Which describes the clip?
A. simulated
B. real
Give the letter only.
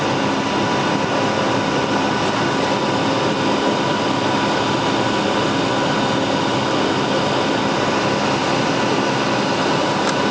B